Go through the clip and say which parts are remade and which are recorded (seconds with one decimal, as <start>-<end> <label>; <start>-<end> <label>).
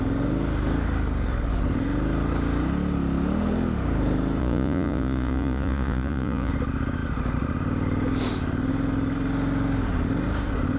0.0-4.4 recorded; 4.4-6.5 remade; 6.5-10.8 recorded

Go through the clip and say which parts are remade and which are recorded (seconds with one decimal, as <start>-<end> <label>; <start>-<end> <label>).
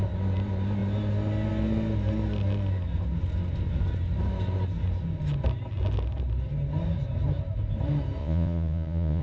0.0-8.2 recorded; 8.2-9.2 remade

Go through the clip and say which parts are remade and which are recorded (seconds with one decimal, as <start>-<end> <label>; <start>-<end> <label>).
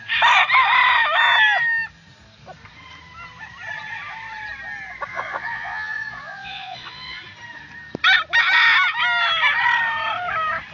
0.0-5.1 recorded; 5.1-7.2 remade; 7.2-10.7 recorded